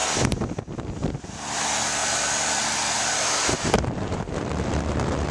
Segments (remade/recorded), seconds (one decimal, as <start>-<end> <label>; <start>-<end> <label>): 0.0-2.0 recorded; 2.0-4.7 remade; 4.7-5.3 recorded

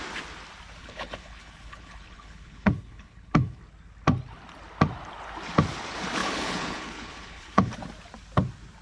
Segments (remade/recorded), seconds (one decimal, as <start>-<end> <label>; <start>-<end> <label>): 0.0-0.8 recorded; 0.8-3.6 remade; 3.6-6.2 recorded; 6.2-7.7 remade; 7.7-8.8 recorded

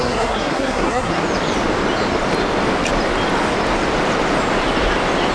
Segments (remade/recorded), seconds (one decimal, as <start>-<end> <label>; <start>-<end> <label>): 0.0-1.2 remade; 1.2-5.3 recorded

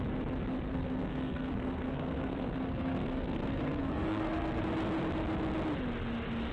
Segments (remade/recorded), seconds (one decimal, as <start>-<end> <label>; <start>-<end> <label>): 0.0-0.7 recorded; 0.7-4.6 remade; 4.6-6.5 recorded

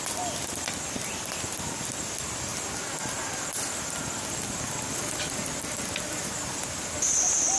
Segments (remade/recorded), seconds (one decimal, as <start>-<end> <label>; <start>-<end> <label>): 0.0-7.6 recorded

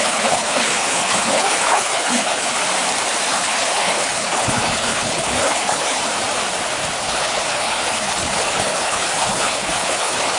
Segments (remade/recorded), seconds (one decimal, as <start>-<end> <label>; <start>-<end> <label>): 0.0-2.6 remade; 2.6-3.3 recorded; 3.3-6.0 remade; 6.0-7.0 recorded; 7.0-10.4 remade

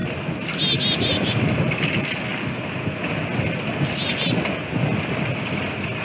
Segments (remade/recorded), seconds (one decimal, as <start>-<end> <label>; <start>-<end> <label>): 0.0-6.0 recorded